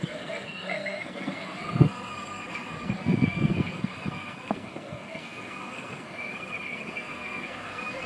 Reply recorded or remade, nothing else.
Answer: remade